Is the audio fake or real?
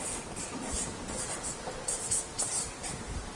real